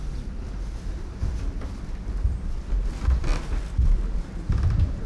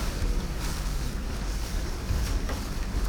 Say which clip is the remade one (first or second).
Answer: second